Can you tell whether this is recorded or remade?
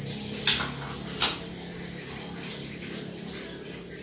recorded